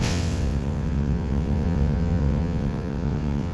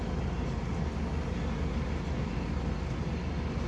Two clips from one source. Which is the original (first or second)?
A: second